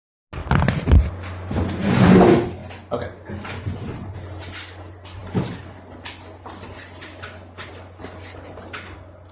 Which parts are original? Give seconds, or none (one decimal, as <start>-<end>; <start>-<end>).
0.0-9.3